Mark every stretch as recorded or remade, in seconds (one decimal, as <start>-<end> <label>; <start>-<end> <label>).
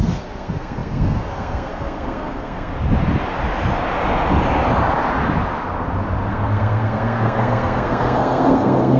0.0-2.7 remade; 2.7-6.3 recorded; 6.3-9.0 remade